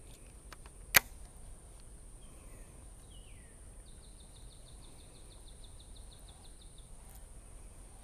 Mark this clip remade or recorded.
recorded